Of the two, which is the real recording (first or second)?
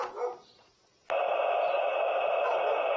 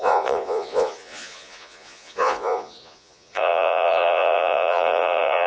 first